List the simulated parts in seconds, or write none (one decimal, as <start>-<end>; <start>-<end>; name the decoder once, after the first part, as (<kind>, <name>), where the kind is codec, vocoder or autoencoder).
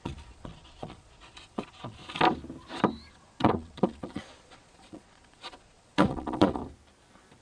0.0-2.0 (vocoder, Vocos); 3.1-6.6